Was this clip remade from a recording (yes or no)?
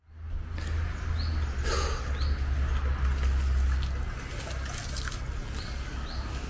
no